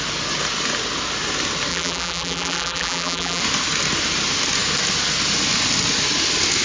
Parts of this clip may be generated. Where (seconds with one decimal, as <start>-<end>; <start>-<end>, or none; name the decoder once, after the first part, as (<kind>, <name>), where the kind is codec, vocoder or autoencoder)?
1.7-3.4 (vocoder, BigVGAN v2)